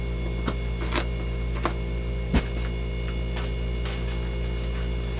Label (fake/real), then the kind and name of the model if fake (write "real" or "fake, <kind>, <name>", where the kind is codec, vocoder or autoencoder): real